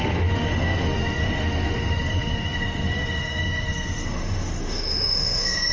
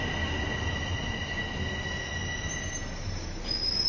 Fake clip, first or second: first